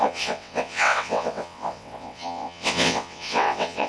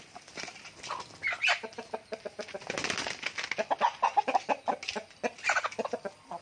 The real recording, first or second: second